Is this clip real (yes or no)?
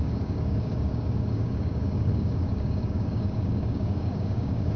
no